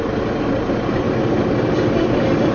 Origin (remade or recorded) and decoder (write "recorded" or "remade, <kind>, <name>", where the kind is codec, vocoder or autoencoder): recorded